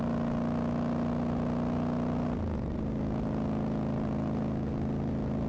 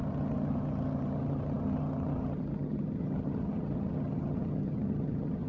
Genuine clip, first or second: first